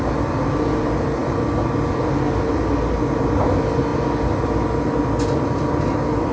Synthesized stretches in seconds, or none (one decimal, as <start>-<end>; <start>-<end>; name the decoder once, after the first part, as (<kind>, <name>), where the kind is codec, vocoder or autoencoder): none